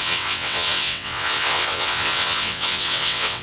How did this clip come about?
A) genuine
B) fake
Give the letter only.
B